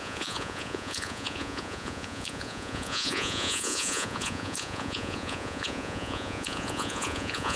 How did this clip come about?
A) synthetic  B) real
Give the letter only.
A